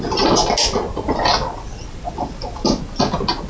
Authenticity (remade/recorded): recorded